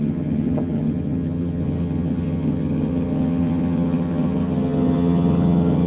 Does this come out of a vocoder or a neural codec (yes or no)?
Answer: yes